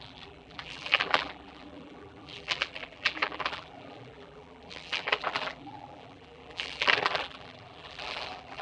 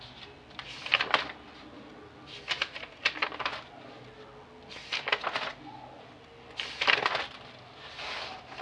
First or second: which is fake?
first